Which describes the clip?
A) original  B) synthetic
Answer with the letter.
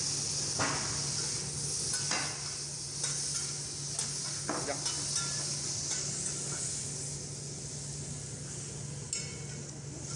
A